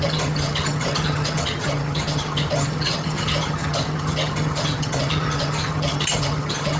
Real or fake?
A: fake